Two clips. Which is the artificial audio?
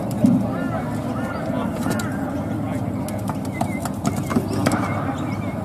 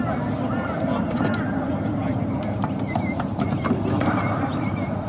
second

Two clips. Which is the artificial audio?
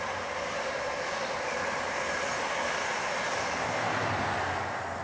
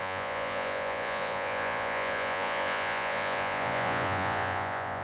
second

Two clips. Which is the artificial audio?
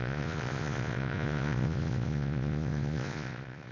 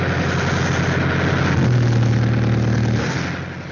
first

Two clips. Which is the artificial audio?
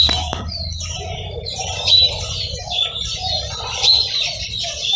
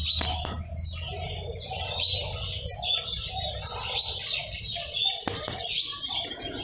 first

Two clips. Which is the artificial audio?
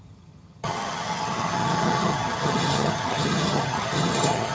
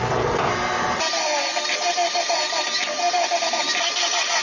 first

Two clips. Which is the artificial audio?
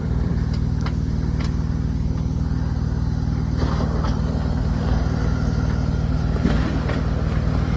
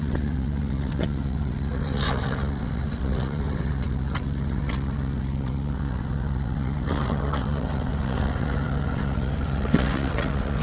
second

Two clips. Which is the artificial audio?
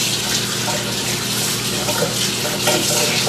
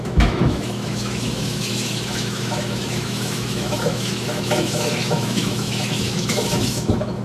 second